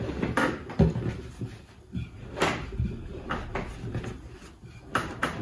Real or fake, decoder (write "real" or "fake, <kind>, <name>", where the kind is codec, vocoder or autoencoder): real